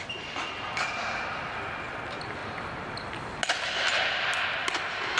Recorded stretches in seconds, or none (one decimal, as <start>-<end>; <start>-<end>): 0.0-5.2